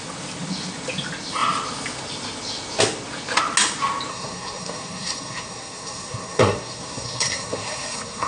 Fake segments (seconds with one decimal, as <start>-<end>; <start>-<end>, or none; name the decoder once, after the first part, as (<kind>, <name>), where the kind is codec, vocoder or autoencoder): 4.1-8.3 (codec, SNAC)